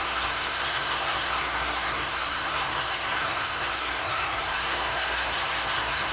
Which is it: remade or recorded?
remade